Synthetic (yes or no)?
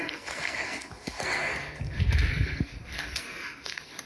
yes